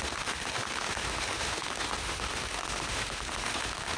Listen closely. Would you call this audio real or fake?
fake